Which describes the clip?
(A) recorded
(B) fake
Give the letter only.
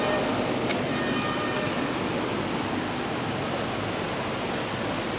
A